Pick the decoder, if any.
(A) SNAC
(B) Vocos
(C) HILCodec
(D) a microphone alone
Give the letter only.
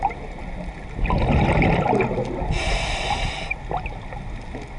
D